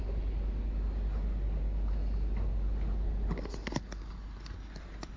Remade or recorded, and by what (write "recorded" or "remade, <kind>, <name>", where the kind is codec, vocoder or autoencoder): recorded